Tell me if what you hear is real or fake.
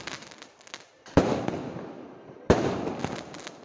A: fake